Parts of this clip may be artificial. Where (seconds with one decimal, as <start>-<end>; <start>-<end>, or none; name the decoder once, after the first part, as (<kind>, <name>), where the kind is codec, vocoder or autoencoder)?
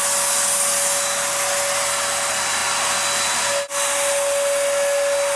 none